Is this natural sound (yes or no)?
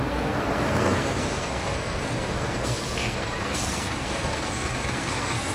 no